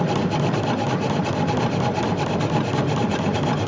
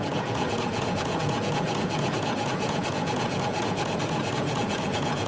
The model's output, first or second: second